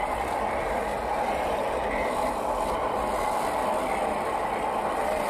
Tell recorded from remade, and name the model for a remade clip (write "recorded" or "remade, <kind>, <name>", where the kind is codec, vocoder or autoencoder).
recorded